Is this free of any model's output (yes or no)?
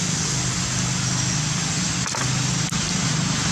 yes